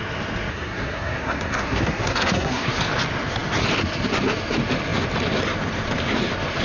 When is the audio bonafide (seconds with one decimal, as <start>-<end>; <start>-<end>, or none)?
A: 0.0-0.5; 2.8-6.6